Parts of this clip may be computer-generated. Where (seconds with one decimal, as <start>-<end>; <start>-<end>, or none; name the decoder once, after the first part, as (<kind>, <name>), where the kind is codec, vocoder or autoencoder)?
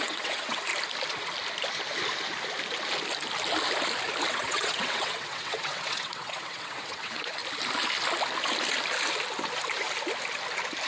0.0-0.7 (vocoder, WaveNeXt); 4.3-7.4